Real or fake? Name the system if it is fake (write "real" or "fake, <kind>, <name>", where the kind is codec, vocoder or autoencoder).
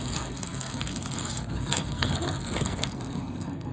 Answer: fake, codec, SNAC